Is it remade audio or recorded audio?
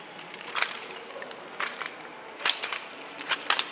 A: remade